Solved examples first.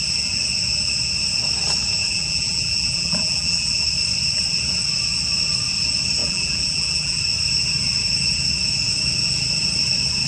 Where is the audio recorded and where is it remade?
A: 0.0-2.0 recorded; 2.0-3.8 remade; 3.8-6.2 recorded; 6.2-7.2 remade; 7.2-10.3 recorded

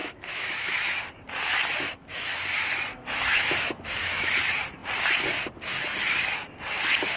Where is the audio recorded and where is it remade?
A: 0.0-1.0 remade; 1.0-2.0 recorded; 2.0-4.3 remade; 4.3-7.2 recorded